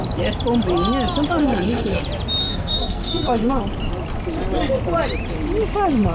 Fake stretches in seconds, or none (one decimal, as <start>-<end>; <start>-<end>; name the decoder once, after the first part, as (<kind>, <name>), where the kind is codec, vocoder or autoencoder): 1.4-2.0 (codec, SNAC); 2.4-3.6